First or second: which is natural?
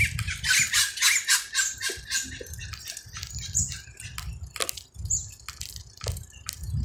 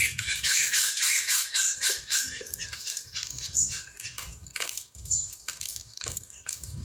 first